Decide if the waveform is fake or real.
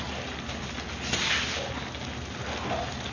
real